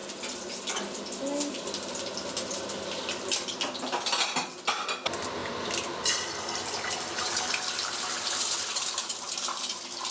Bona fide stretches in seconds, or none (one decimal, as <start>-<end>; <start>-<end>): 0.0-10.1